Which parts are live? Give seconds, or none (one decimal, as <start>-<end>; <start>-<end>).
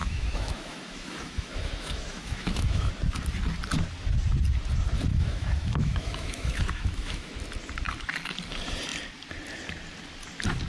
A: 2.9-5.1; 7.3-10.7